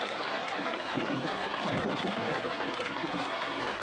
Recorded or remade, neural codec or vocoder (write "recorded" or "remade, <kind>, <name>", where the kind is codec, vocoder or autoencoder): remade, codec, SNAC